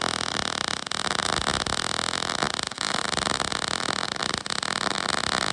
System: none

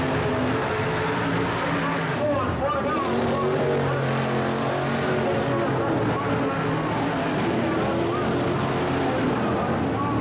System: none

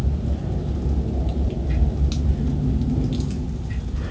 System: none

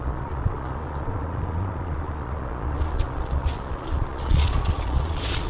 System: vocoder, Vocos